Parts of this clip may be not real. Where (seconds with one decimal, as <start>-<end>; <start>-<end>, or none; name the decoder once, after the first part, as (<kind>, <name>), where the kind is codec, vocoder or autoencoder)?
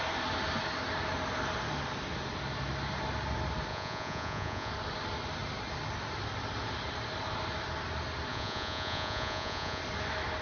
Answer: 3.7-4.7 (vocoder, Vocos); 8.3-9.8